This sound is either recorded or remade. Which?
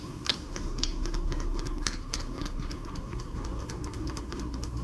remade